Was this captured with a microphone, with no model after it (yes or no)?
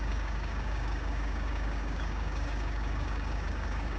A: no